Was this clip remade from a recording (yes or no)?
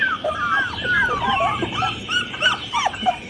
no